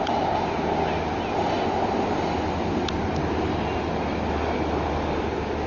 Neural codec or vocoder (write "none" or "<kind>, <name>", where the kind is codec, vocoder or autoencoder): none